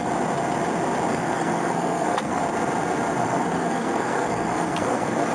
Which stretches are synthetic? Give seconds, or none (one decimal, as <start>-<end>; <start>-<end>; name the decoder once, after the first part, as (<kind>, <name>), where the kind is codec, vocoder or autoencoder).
1.1-2.4 (codec, SNAC); 3.2-5.3